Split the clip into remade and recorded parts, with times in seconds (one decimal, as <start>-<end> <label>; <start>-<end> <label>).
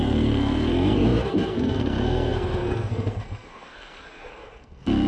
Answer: 0.0-5.1 remade